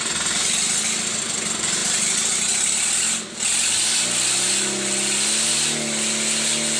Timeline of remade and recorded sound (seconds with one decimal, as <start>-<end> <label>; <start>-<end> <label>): 0.0-6.8 recorded